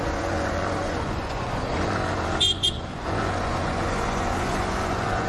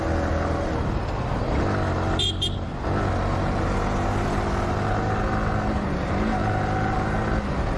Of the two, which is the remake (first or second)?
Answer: first